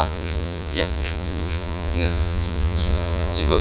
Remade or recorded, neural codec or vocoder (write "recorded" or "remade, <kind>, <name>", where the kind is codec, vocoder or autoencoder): remade, vocoder, Vocos